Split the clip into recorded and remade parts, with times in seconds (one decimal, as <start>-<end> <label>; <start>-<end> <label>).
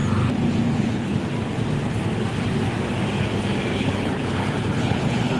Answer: 0.0-0.7 recorded; 0.7-1.2 remade; 1.2-3.8 recorded; 3.8-5.4 remade